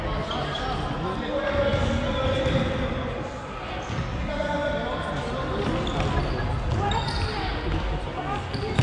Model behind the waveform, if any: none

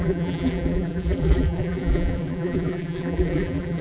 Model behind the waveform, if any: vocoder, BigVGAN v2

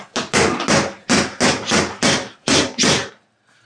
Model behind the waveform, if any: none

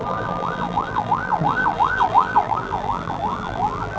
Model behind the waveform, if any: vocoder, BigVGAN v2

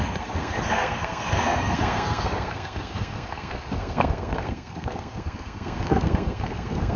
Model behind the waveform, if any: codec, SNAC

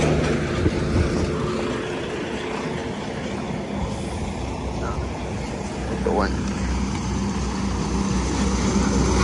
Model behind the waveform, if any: none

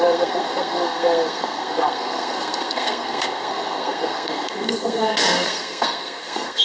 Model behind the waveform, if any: codec, SNAC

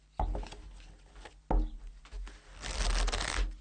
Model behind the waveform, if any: none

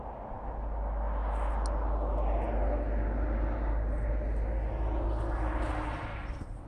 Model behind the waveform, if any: none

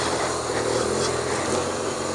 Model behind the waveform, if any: none